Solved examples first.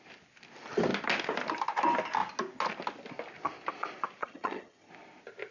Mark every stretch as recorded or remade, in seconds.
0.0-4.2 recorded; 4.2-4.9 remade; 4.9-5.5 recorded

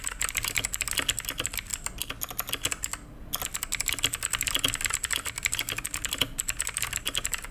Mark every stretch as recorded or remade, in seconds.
0.0-7.5 recorded